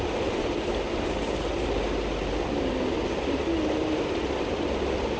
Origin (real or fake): real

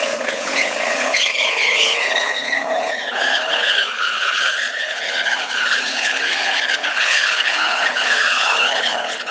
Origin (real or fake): fake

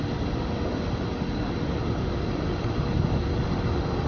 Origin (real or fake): real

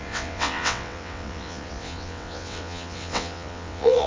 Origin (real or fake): fake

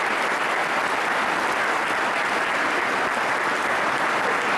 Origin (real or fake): real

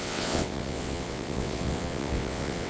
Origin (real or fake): fake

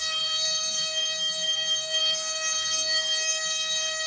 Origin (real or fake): fake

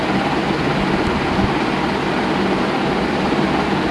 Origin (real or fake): real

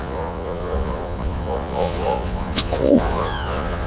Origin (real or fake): fake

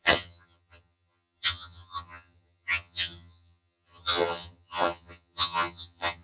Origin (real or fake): fake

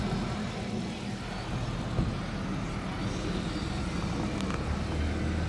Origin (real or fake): real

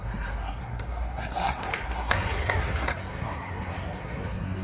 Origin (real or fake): fake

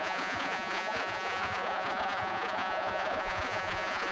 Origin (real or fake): fake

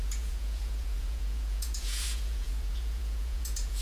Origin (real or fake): fake